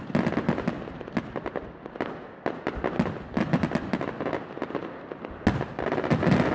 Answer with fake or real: real